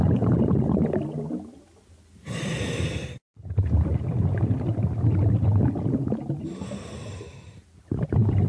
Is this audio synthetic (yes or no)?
no